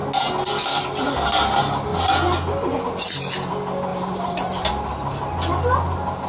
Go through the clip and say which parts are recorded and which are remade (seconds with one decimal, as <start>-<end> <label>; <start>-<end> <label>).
0.0-3.9 recorded; 3.9-4.7 remade; 4.7-6.3 recorded